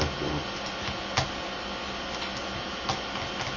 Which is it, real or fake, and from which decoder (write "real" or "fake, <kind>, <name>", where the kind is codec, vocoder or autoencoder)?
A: real